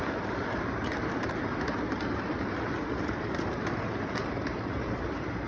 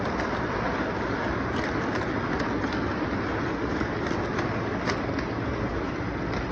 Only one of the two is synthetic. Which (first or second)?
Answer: first